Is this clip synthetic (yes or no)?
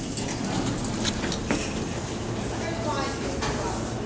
no